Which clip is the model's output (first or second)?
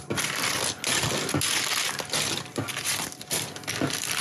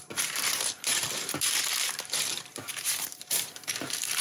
second